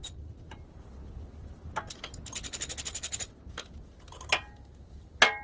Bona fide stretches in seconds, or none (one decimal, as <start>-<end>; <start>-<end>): 0.0-5.4